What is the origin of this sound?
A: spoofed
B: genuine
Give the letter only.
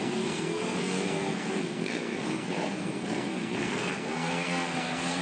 A